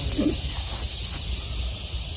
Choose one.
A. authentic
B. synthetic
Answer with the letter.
A